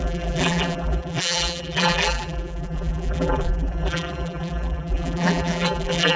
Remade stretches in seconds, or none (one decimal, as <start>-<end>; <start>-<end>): 0.0-6.2